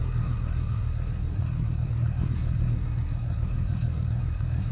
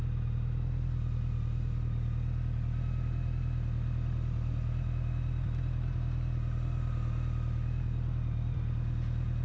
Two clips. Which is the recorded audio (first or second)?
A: second